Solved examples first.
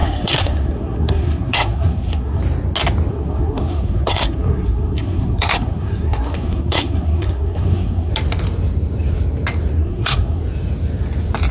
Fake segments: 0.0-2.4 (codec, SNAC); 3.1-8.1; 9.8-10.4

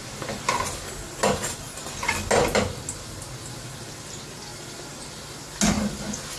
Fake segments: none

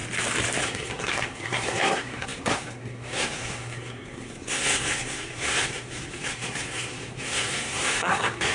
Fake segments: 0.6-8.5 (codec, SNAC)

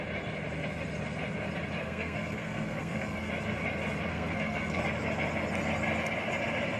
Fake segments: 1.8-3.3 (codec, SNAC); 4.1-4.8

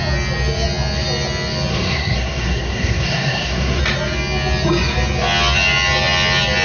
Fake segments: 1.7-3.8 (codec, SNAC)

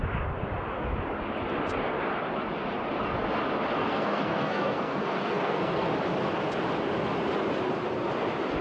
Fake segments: 3.8-5.9 (codec, SNAC)

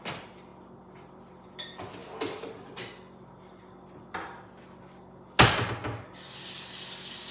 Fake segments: none

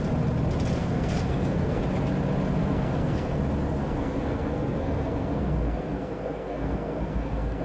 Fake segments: 0.8-1.8 (codec, SNAC); 2.6-3.4; 3.8-7.6